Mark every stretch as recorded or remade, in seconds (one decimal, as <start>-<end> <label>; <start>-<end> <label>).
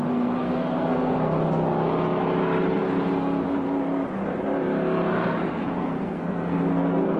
0.0-1.3 remade; 1.3-5.1 recorded; 5.1-7.2 remade